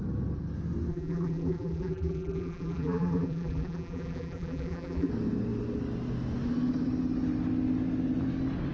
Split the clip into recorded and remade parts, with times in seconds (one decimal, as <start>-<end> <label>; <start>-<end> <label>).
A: 0.0-0.9 recorded; 0.9-5.1 remade; 5.1-8.7 recorded